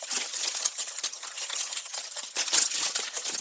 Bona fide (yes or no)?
no